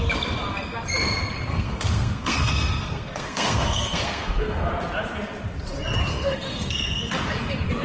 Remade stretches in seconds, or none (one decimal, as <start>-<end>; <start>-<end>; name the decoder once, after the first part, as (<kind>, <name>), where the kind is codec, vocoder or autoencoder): 1.5-4.7 (codec, SNAC); 6.1-7.0

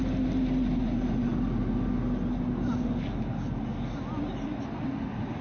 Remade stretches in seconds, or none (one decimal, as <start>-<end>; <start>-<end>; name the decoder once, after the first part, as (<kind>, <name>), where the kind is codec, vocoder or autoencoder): none

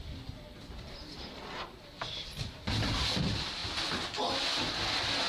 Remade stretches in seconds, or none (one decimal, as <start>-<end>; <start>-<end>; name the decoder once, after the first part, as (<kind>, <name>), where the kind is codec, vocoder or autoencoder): none

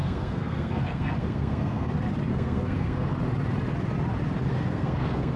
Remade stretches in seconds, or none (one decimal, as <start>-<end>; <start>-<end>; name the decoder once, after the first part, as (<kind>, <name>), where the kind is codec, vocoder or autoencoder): 0.0-1.9 (codec, SNAC); 2.3-3.1; 4.5-5.4

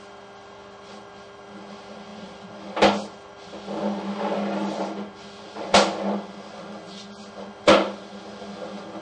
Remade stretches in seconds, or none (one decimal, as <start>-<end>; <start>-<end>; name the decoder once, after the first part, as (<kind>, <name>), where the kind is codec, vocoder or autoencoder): none

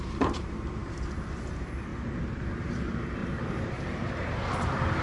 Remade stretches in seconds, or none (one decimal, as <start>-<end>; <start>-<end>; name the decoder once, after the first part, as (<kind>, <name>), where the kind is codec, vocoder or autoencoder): 0.0-1.9 (vocoder, BigVGAN v2); 2.6-5.0

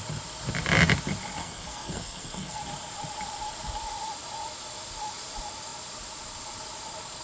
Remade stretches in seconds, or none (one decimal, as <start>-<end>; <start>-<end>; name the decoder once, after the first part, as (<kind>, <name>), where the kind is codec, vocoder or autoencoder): 1.4-2.6 (codec, SNAC)

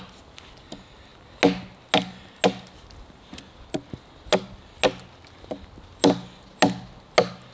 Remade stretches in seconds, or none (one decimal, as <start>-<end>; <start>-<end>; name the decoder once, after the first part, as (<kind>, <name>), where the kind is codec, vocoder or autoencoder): none